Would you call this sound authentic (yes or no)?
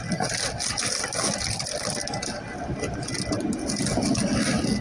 yes